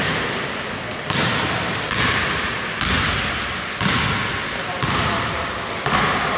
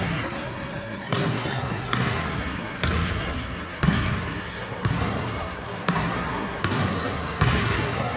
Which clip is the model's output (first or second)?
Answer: second